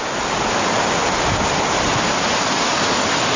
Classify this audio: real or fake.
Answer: real